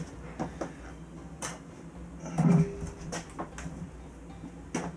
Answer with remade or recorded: recorded